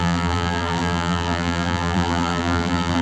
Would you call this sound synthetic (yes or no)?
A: yes